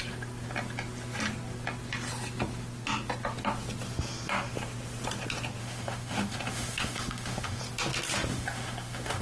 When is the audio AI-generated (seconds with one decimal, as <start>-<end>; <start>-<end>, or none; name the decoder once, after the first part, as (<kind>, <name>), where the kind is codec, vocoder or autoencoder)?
5.6-7.6 (autoencoder, DAC-VAE); 8.3-9.2